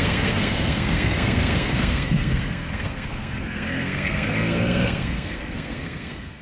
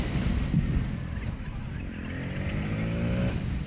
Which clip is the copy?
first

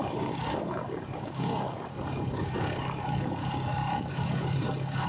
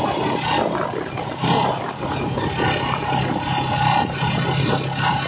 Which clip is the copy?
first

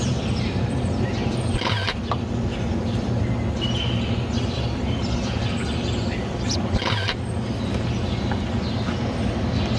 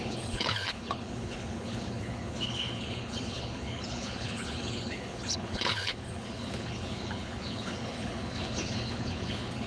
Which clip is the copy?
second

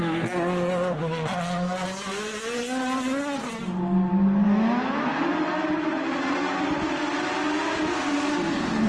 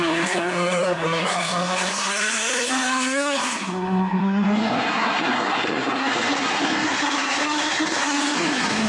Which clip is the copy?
second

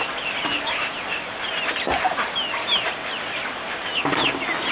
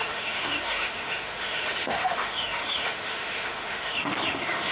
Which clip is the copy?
second